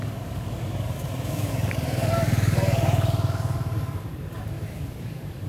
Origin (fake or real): fake